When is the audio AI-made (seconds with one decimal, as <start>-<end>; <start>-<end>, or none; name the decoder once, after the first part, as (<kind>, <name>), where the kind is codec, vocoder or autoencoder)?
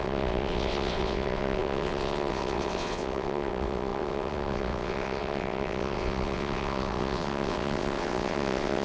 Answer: 0.0-8.8 (vocoder, WaveNeXt)